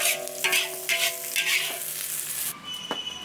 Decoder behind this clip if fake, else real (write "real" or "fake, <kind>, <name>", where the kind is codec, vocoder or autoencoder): real